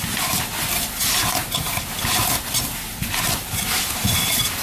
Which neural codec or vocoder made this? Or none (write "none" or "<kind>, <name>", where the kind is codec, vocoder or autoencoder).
none